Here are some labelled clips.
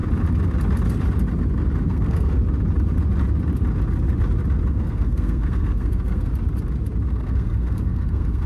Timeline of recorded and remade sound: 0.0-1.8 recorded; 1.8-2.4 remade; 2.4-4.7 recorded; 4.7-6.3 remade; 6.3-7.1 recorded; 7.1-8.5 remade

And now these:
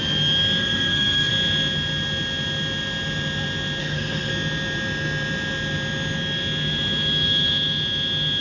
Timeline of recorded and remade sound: 0.0-0.6 recorded; 0.6-1.3 remade; 1.3-3.8 recorded; 3.8-4.3 remade; 4.3-8.4 recorded